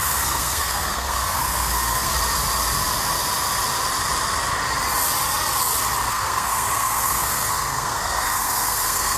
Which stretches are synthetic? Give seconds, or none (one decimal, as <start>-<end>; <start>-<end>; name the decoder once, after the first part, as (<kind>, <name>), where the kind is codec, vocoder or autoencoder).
0.0-2.1 (codec, SNAC); 6.1-9.2